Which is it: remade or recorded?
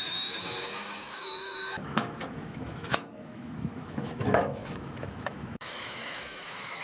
remade